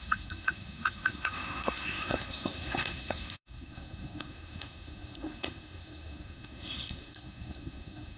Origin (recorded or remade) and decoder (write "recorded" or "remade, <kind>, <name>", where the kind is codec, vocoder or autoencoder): remade, codec, SNAC